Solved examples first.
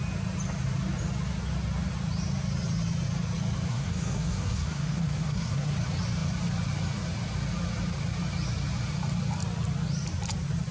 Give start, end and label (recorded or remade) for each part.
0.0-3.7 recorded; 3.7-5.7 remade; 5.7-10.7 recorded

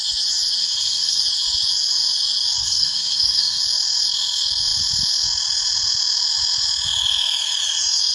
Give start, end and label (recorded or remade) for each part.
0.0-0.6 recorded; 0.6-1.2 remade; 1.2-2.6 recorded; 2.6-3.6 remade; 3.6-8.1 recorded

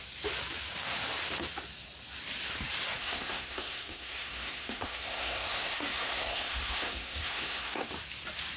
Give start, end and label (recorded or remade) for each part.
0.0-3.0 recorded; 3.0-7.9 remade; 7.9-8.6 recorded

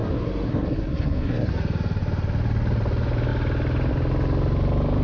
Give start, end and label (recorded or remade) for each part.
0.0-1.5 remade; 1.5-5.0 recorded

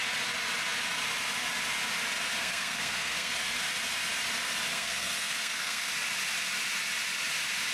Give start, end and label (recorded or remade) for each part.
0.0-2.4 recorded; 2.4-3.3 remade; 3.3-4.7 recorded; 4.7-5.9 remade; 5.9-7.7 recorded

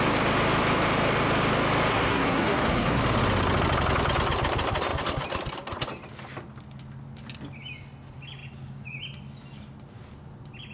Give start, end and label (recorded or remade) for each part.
0.0-1.9 recorded; 1.9-3.0 remade; 3.0-10.7 recorded

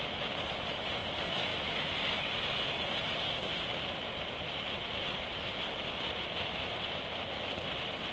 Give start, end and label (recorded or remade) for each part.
0.0-8.1 recorded